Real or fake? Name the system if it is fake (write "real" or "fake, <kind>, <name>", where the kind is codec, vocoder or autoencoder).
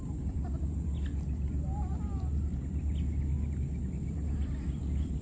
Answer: real